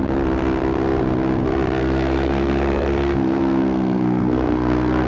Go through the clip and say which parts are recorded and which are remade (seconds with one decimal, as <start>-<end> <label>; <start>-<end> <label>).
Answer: 0.0-1.8 recorded; 1.8-5.1 remade